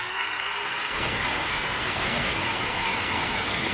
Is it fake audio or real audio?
fake